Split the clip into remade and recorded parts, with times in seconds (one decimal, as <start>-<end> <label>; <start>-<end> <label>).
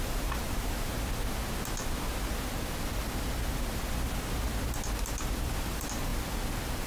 0.0-0.9 remade; 0.9-5.0 recorded; 5.0-6.1 remade; 6.1-6.9 recorded